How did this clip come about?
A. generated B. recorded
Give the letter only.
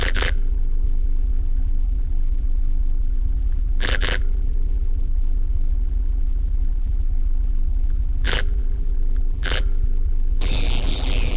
A